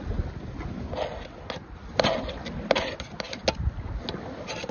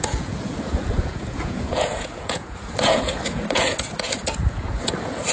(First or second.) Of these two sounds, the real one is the first